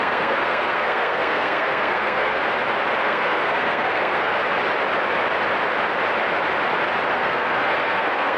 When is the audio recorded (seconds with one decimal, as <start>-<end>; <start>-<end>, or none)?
2.4-3.0; 4.4-7.1

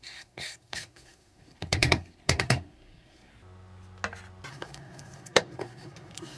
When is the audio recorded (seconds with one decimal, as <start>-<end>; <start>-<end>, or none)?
3.3-4.5

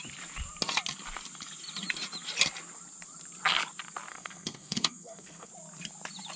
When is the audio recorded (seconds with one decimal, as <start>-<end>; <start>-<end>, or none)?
0.0-4.1; 5.5-6.4

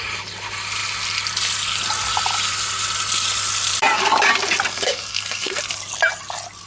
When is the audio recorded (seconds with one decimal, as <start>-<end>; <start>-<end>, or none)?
0.0-4.7; 5.6-6.7

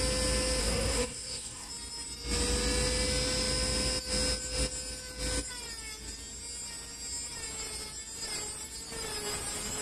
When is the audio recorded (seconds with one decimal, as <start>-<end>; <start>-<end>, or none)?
0.0-0.6; 1.7-9.8

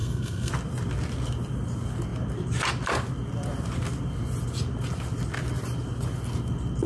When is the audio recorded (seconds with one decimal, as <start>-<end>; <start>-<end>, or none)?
0.5-6.9

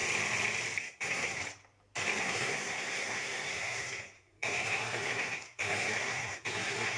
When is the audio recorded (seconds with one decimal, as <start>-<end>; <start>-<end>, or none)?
0.0-0.8; 1.4-2.2